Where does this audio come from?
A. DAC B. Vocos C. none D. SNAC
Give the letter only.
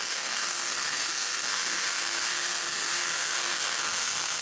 D